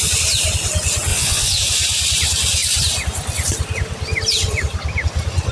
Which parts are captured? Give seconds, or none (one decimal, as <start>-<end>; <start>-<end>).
0.0-1.1; 1.6-5.5